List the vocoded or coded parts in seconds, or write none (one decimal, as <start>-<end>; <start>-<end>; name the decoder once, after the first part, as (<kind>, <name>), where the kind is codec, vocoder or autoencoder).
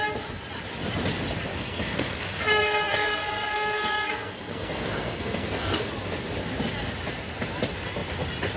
1.5-5.9 (codec, SNAC)